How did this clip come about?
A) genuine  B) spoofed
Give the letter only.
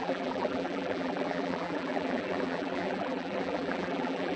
B